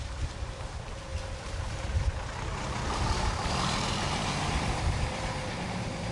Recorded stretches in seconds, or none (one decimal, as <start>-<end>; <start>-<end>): none